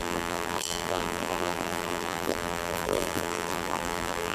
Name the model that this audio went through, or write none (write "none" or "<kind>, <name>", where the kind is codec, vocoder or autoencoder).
vocoder, BigVGAN v2